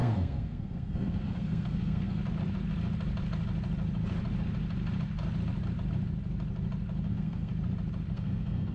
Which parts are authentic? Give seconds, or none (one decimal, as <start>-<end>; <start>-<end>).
2.2-7.1; 7.5-8.1